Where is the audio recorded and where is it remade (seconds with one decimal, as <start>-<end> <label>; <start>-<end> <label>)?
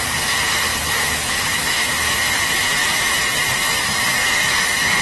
0.0-0.7 recorded; 0.7-3.2 remade; 3.2-4.2 recorded; 4.2-5.0 remade